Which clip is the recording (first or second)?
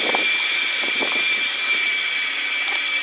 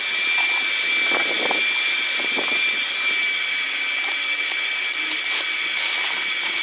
second